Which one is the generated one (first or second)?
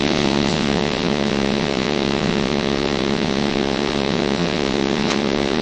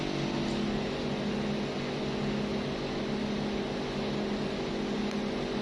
first